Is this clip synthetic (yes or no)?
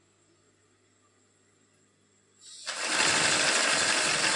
no